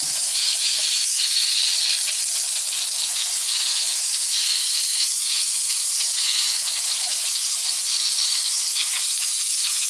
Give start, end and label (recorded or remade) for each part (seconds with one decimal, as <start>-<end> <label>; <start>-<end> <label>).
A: 0.0-1.6 remade; 1.6-3.0 recorded; 3.0-9.9 remade